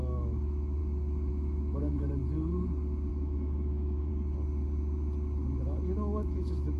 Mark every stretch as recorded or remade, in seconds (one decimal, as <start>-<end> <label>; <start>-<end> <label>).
0.0-0.8 remade; 0.8-1.3 recorded; 1.3-2.2 remade; 2.2-3.1 recorded; 3.1-4.1 remade; 4.1-5.6 recorded; 5.6-6.8 remade

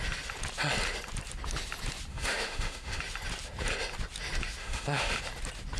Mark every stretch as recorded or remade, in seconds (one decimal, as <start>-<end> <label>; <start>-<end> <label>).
0.0-2.1 recorded; 2.1-3.0 remade; 3.0-4.6 recorded; 4.6-5.2 remade; 5.2-5.8 recorded